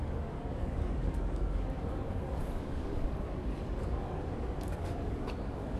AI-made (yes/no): yes